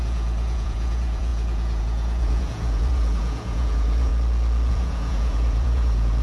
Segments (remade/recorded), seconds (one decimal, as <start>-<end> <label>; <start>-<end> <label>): 0.0-4.1 remade; 4.1-4.7 recorded; 4.7-6.2 remade